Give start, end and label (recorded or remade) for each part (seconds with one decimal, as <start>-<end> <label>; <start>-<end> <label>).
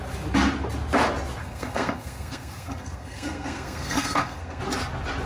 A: 0.0-1.4 recorded; 1.4-4.6 remade; 4.6-5.3 recorded